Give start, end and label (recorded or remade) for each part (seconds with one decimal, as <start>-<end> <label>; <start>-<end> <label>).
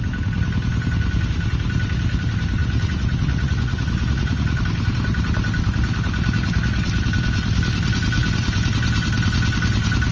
0.0-2.6 recorded; 2.6-4.6 remade; 4.6-10.1 recorded